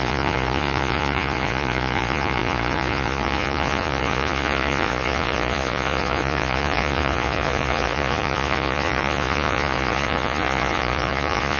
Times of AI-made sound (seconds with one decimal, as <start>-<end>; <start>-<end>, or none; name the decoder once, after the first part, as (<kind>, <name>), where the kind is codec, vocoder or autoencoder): 0.0-11.6 (vocoder, Vocos)